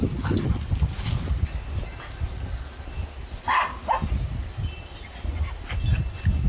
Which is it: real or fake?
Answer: real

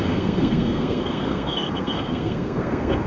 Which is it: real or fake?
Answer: fake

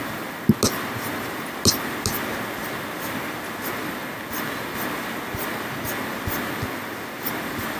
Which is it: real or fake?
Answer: real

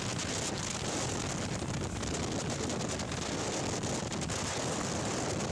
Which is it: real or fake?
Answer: real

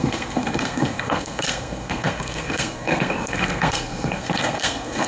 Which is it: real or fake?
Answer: fake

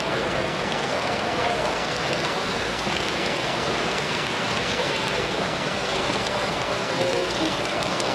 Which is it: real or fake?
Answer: fake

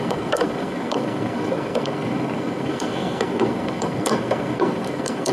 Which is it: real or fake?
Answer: fake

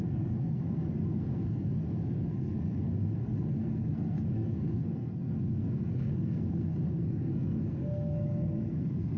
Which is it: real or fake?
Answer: fake